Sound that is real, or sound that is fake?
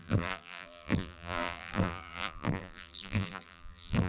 fake